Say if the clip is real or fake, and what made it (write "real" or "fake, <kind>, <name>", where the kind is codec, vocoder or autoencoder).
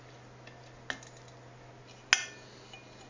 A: real